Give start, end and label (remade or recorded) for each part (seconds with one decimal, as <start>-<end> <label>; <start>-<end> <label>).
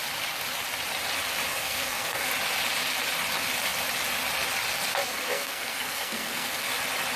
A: 0.0-1.5 recorded; 1.5-2.3 remade; 2.3-4.9 recorded; 4.9-6.7 remade; 6.7-7.2 recorded